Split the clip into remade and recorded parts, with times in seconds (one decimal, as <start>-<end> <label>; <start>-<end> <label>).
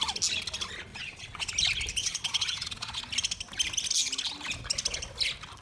0.0-0.9 recorded; 0.9-1.5 remade; 1.5-2.0 recorded; 2.0-3.0 remade; 3.0-5.6 recorded